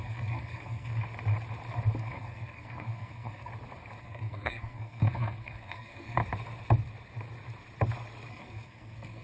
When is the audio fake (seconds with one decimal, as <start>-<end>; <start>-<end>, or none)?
0.0-0.9; 2.0-3.5; 4.0-6.2; 8.3-9.2